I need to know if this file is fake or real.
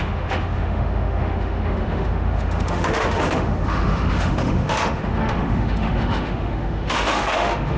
fake